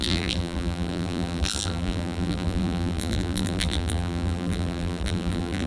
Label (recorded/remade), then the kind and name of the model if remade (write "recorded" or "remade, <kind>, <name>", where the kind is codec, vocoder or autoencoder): remade, vocoder, BigVGAN v2